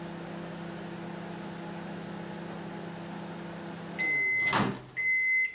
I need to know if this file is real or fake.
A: real